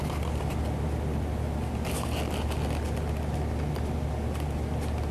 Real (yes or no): yes